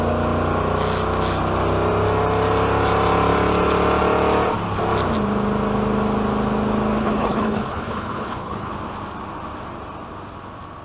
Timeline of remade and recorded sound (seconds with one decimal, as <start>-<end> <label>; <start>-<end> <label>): 0.0-7.0 recorded; 7.0-8.7 remade; 8.7-10.8 recorded